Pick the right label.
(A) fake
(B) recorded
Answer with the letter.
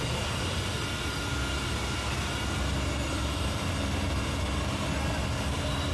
B